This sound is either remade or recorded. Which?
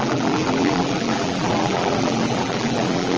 remade